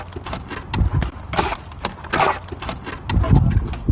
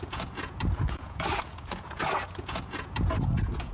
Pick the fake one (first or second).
second